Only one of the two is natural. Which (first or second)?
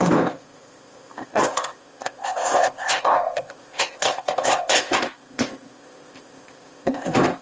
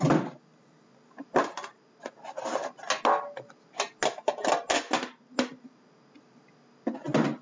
second